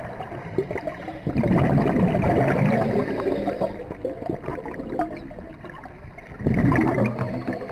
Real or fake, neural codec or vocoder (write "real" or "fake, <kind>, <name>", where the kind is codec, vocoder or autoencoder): real